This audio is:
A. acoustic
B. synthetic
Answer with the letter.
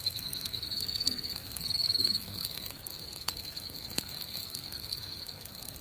B